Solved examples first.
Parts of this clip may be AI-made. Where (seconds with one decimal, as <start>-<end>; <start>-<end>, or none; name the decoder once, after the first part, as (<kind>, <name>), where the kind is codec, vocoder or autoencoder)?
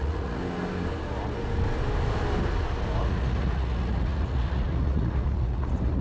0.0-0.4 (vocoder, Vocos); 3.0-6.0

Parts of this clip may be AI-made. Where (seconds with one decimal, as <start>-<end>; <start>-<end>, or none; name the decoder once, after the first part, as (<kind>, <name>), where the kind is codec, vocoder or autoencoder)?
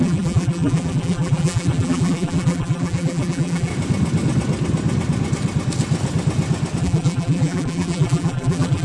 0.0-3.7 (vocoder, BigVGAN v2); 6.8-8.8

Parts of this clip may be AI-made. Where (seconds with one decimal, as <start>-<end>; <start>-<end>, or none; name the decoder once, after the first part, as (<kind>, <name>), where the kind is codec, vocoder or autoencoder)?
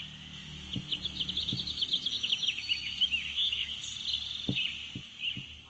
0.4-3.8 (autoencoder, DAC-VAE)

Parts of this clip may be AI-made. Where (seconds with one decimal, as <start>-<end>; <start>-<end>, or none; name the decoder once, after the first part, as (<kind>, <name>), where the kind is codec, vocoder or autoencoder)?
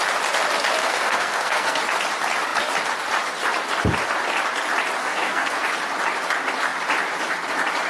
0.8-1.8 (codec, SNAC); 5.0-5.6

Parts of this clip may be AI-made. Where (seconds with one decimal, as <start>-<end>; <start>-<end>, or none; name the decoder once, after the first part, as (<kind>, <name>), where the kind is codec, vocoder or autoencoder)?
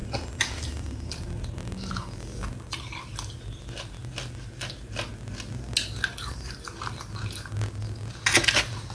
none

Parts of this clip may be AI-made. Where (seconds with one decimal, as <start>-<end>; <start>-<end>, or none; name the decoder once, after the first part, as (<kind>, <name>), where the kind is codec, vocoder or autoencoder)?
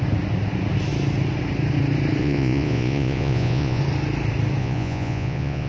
2.2-3.8 (vocoder, Vocos); 4.6-5.7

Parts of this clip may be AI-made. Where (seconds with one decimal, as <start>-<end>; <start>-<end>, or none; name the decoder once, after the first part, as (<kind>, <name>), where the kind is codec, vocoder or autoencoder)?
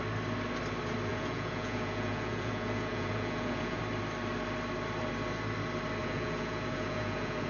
1.1-3.8 (vocoder, Vocos); 6.0-7.5